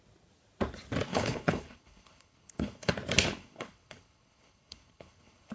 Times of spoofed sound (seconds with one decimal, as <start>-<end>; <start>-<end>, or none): 1.1-2.9; 3.4-5.5